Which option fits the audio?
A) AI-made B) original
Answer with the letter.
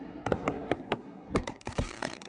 A